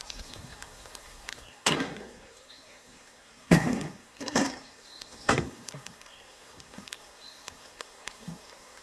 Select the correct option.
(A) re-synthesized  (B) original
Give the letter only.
A